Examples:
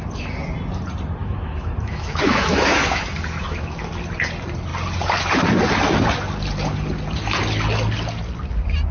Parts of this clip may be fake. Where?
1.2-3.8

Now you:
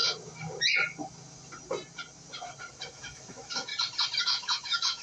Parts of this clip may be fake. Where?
2.7-3.7; 4.2-5.0

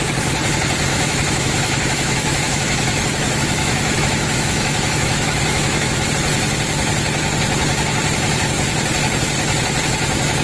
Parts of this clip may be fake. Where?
0.9-6.1

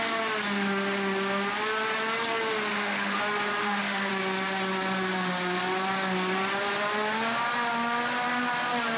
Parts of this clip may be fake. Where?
2.7-3.2; 3.6-4.1

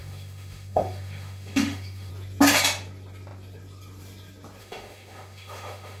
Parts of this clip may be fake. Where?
0.0-2.1; 4.6-6.0

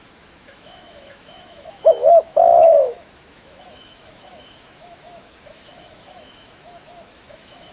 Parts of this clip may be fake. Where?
0.0-7.7